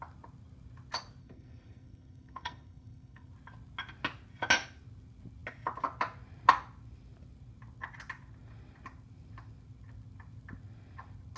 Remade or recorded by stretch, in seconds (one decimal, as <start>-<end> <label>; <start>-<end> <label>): 0.0-1.2 recorded; 1.2-3.3 remade; 3.3-11.4 recorded